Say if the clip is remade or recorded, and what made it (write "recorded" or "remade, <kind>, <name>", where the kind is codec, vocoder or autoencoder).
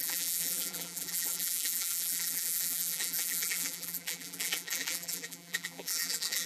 remade, vocoder, BigVGAN v2